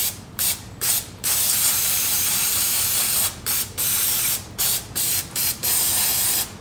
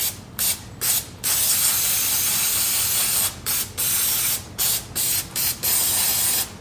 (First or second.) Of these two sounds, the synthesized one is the first